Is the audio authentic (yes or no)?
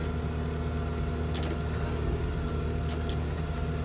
yes